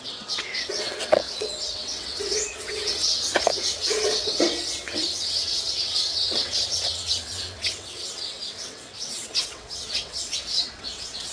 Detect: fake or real fake